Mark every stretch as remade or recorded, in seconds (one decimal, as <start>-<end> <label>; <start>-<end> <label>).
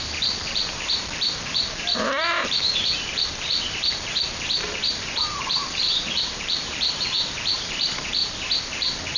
0.0-8.2 remade; 8.2-8.7 recorded; 8.7-9.2 remade